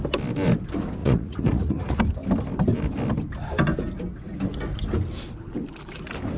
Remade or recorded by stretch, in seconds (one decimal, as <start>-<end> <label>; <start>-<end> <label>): 0.0-1.0 recorded; 1.0-2.0 remade; 2.0-6.4 recorded